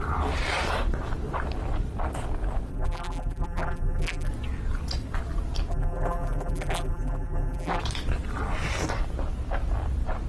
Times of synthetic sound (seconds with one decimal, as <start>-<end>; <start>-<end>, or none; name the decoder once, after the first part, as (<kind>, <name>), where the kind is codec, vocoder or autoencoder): 2.7-4.3 (vocoder, BigVGAN v2); 5.7-7.8